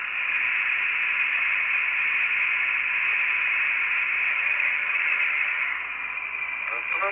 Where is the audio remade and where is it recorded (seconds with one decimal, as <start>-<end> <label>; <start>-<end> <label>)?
0.0-4.3 recorded; 4.3-5.6 remade; 5.6-7.1 recorded